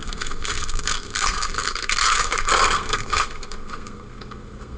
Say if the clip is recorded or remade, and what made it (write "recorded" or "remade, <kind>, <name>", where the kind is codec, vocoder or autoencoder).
remade, codec, SNAC